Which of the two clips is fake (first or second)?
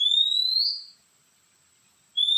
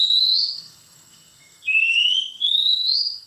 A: second